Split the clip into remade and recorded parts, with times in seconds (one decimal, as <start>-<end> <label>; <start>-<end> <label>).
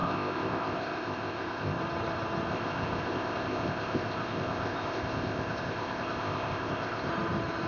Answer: 0.0-1.8 remade; 1.8-2.5 recorded; 2.5-7.1 remade; 7.1-7.7 recorded